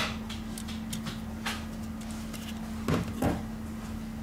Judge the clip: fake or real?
real